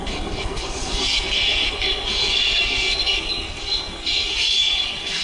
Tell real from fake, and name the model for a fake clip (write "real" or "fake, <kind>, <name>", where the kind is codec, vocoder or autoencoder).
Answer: fake, codec, SNAC